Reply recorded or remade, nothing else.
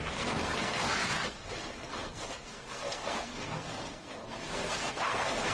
remade